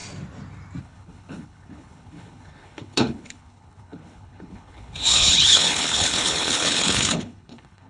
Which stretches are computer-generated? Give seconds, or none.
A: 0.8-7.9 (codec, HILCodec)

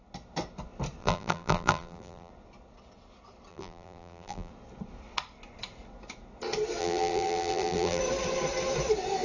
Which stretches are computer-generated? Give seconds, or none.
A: 1.0-2.3 (vocoder, BigVGAN v2); 3.5-4.5; 6.8-8.0

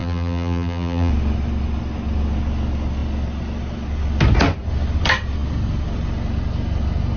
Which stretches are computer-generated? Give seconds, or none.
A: 0.0-1.1 (vocoder, BigVGAN v2)

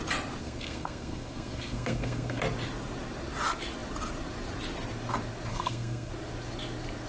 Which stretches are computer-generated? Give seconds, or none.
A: 0.4-2.4 (codec, SNAC); 5.5-6.1

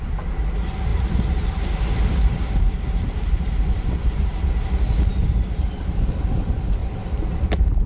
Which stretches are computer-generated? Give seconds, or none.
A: 0.9-4.3 (vocoder, BigVGAN v2); 5.1-5.9; 6.8-7.9

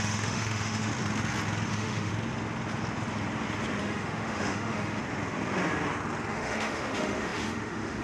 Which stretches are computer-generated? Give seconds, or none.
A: 0.0-0.9 (autoencoder, DAC-VAE); 1.7-2.1; 3.8-5.0; 6.3-8.0

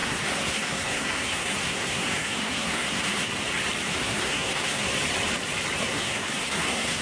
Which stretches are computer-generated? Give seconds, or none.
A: 0.0-3.3 (codec, SNAC); 3.9-4.9; 5.8-7.0

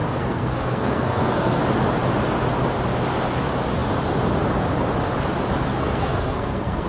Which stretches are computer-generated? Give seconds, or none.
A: 0.0-1.6 (codec, SNAC); 5.7-6.9